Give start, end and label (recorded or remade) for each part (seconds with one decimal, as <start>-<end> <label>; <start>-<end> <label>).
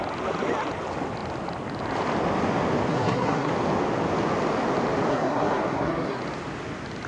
0.0-2.9 recorded; 2.9-3.5 remade; 3.5-5.1 recorded; 5.1-6.2 remade; 6.2-7.1 recorded